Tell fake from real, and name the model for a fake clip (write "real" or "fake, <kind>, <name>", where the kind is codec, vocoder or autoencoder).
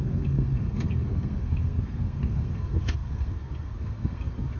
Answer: fake, codec, SNAC